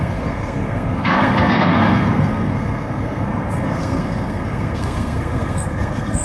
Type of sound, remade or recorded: remade